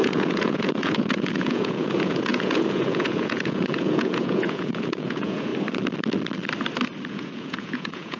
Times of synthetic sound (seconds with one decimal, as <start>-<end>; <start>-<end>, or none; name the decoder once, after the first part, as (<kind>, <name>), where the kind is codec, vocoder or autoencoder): 0.0-5.5 (vocoder, Vocos); 7.1-8.2